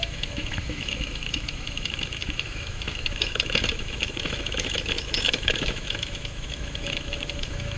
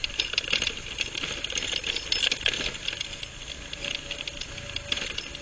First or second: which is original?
second